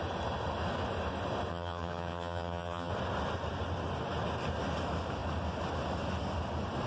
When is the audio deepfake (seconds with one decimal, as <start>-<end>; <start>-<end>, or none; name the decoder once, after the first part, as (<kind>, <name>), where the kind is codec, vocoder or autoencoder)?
1.5-2.9 (vocoder, HiFi-GAN)